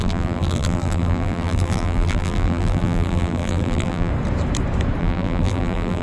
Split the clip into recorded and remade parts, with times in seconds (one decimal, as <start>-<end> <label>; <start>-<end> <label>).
0.0-4.1 remade; 4.1-5.0 recorded; 5.0-6.0 remade